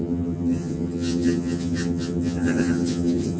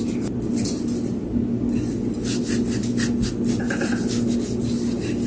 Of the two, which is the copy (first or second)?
first